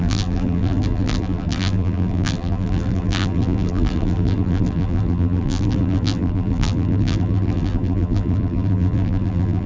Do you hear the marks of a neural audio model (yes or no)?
yes